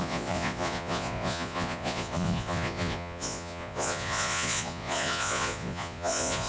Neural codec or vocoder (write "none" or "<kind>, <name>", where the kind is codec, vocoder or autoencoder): vocoder, Vocos